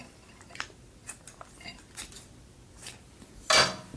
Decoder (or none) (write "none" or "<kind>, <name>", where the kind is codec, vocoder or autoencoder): none